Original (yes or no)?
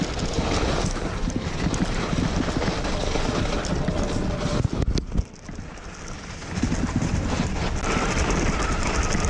yes